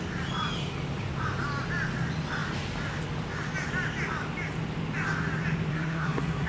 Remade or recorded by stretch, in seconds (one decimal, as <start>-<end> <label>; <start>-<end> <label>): 0.0-5.7 recorded; 5.7-6.5 remade